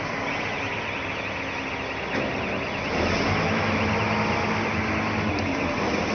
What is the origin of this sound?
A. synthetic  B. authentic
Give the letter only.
B